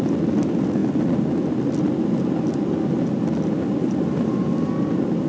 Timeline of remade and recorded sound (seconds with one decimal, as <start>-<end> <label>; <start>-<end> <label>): 0.0-5.3 recorded